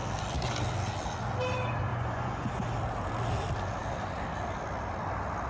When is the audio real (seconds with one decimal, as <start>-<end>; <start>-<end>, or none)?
0.0-1.9; 2.5-5.5